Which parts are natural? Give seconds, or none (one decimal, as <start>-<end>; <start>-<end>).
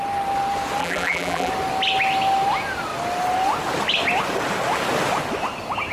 0.0-0.8; 1.5-5.9